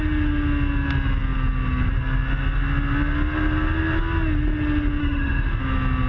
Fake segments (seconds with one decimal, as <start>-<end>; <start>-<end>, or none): 5.0-5.6